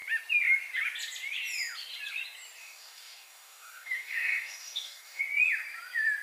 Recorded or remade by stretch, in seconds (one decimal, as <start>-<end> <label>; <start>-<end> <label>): 0.0-2.6 recorded; 2.6-5.2 remade; 5.2-6.2 recorded

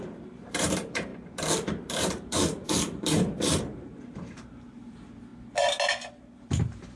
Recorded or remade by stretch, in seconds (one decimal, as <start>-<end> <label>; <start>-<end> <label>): 0.0-5.3 remade; 5.3-6.1 recorded; 6.1-7.0 remade

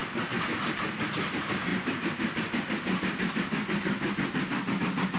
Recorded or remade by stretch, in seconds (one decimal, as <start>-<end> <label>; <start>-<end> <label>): 0.0-5.2 recorded